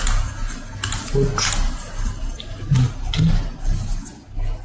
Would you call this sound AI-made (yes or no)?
no